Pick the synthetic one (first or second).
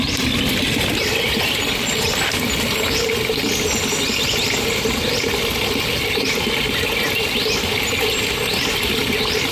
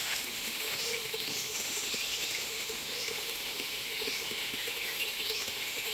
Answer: second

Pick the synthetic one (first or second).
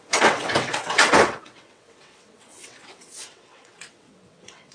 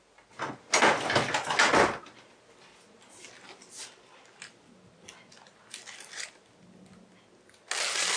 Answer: first